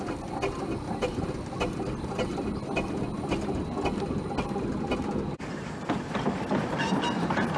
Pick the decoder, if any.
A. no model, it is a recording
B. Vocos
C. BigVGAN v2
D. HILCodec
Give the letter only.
A